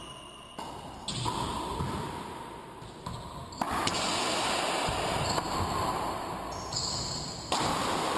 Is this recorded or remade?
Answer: recorded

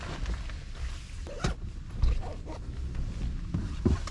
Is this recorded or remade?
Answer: recorded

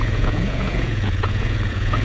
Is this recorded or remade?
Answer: remade